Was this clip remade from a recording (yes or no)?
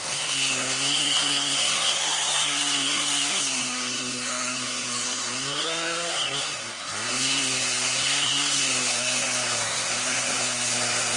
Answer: yes